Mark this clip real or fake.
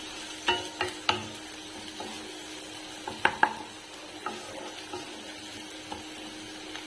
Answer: real